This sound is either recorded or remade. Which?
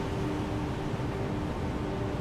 recorded